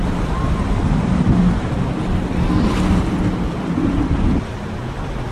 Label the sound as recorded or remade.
recorded